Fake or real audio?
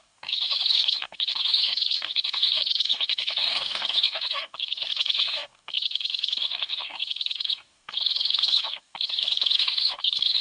fake